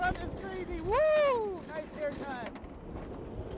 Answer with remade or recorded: recorded